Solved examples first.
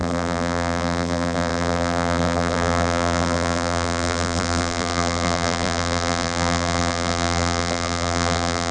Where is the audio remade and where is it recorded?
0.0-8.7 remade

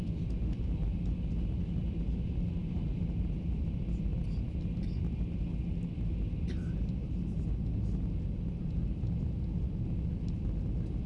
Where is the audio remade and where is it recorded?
0.0-1.8 recorded; 1.8-2.5 remade; 2.5-11.1 recorded

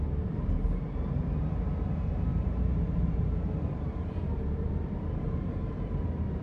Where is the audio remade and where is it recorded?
0.0-2.3 recorded; 2.3-6.4 remade

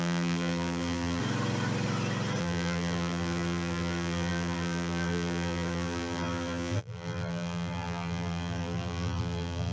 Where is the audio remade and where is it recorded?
0.0-1.2 remade; 1.2-2.4 recorded; 2.4-9.7 remade

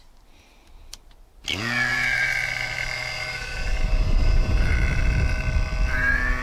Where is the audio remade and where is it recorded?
0.0-1.9 recorded; 1.9-4.7 remade; 4.7-6.4 recorded

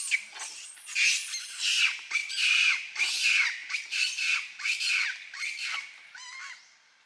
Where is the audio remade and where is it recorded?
0.0-2.2 recorded; 2.2-3.1 remade; 3.1-3.6 recorded; 3.6-4.2 remade; 4.2-7.1 recorded

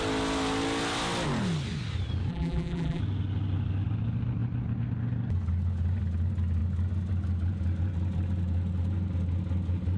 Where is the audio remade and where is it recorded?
0.0-2.3 recorded; 2.3-3.0 remade; 3.0-10.0 recorded